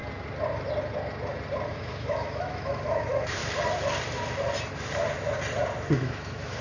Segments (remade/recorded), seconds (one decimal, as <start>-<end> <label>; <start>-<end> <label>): 0.0-1.7 recorded; 1.7-3.4 remade; 3.4-5.9 recorded; 5.9-6.6 remade